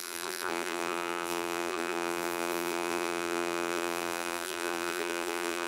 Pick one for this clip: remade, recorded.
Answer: remade